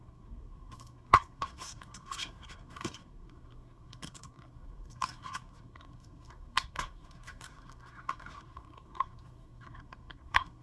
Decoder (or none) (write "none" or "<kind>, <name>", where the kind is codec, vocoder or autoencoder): codec, SNAC